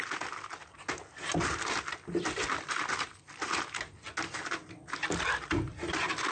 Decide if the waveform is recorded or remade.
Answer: recorded